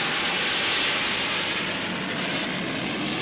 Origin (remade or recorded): recorded